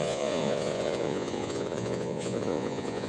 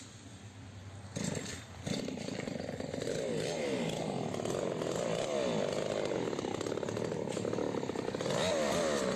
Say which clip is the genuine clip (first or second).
second